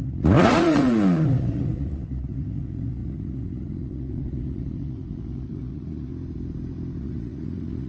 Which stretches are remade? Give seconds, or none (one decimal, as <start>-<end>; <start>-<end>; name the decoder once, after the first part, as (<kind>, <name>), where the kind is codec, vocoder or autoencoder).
0.0-6.1 (vocoder, Vocos); 7.0-7.9